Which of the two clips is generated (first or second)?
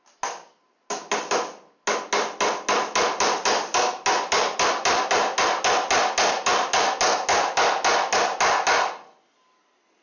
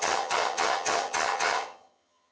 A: second